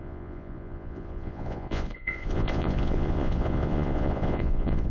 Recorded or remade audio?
remade